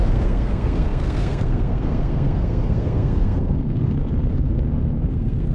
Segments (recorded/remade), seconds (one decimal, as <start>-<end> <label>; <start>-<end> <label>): 0.0-5.5 remade